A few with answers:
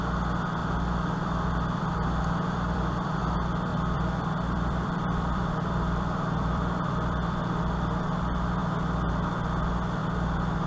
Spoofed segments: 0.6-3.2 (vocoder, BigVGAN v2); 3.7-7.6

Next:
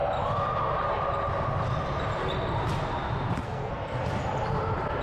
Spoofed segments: 3.4-4.0 (codec, SNAC)

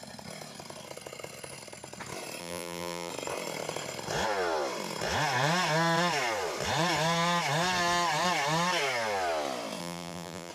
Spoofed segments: 2.4-3.1 (vocoder, BigVGAN v2); 9.8-10.5